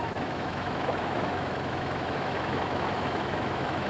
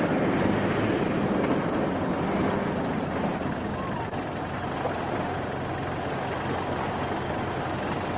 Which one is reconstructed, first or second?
first